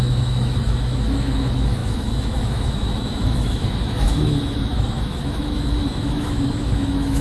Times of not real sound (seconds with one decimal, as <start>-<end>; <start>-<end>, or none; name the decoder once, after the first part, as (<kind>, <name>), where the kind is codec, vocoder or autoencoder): 0.0-7.2 (autoencoder, DAC-VAE)